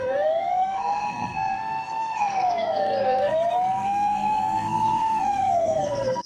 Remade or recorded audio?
remade